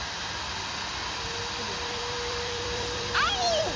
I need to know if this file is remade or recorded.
remade